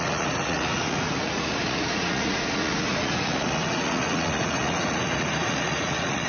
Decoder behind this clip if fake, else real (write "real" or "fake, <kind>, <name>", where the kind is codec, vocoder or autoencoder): fake, vocoder, Vocos